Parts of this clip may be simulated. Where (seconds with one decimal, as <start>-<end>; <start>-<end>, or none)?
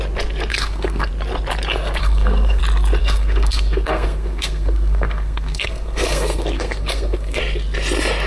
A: 0.5-1.1; 2.0-2.6; 3.0-7.4